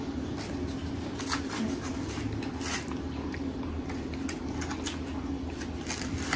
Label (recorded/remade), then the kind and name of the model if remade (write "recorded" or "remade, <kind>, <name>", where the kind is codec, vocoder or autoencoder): recorded